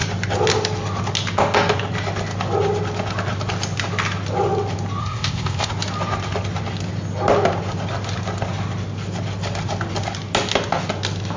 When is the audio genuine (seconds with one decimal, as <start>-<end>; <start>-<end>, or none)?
0.0-5.0; 5.7-11.4